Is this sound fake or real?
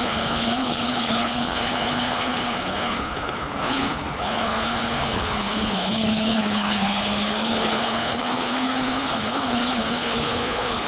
fake